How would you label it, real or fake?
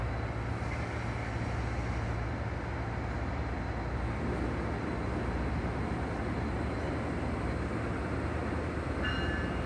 real